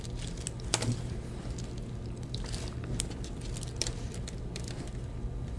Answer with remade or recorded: recorded